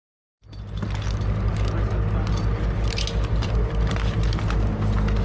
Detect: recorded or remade recorded